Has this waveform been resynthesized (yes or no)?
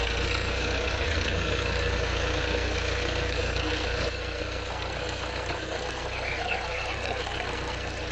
yes